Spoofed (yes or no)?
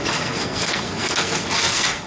yes